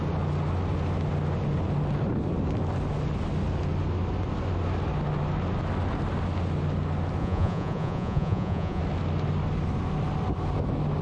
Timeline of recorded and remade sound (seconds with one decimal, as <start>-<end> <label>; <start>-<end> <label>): 0.0-7.2 recorded; 7.2-8.8 remade; 8.8-11.0 recorded